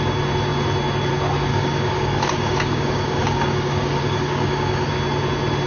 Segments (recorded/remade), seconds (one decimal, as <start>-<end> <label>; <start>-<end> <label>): 0.0-1.5 recorded; 1.5-4.9 remade; 4.9-5.7 recorded